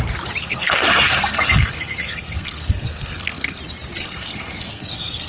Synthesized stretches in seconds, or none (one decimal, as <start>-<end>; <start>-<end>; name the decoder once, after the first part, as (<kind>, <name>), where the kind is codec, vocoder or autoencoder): 0.4-3.6 (codec, SNAC); 4.0-5.3